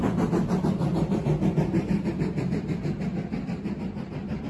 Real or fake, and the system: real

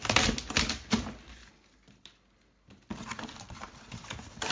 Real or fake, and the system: real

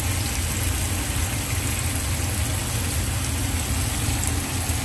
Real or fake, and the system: real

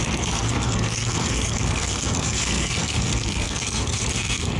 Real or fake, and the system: fake, codec, SNAC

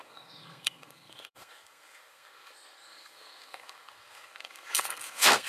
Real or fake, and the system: fake, codec, SNAC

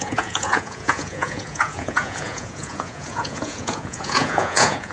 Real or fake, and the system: fake, vocoder, Vocos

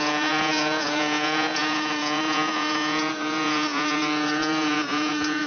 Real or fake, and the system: fake, vocoder, Vocos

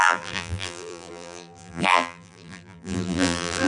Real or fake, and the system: fake, vocoder, BigVGAN v2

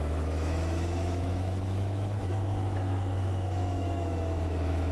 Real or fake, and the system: fake, autoencoder, DAC-VAE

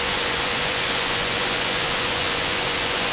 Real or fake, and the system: fake, vocoder, Vocos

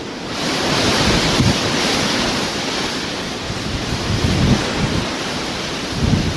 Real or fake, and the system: real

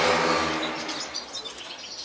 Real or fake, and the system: real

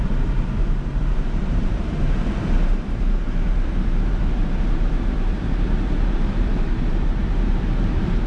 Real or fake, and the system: fake, vocoder, BigVGAN v2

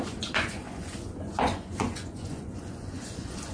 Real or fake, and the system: fake, vocoder, Vocos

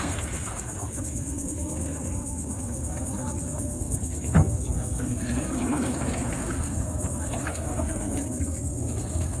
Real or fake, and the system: fake, codec, SNAC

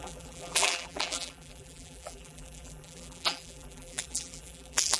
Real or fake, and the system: fake, vocoder, BigVGAN v2